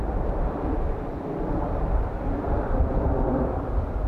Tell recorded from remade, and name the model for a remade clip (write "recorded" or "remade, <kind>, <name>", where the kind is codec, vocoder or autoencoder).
remade, vocoder, BigVGAN v2